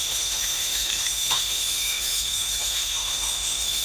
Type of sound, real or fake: fake